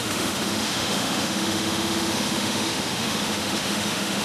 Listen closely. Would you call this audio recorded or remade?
remade